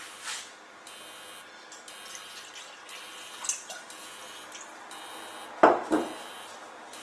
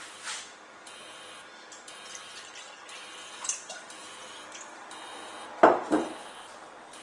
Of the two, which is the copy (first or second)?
second